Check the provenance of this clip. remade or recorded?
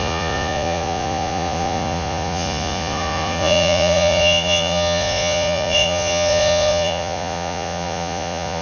remade